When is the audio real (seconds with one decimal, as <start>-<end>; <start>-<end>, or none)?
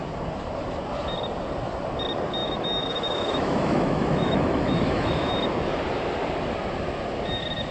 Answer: 0.0-2.4; 5.4-7.7